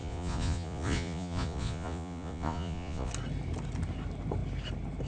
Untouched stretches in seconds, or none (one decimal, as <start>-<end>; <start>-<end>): 3.1-5.1